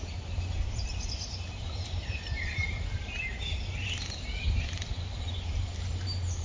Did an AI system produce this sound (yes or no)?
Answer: yes